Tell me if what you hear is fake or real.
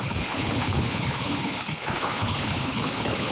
fake